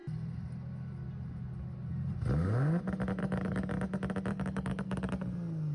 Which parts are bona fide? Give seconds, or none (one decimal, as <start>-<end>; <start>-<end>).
0.0-3.2; 3.7-4.3; 5.1-5.7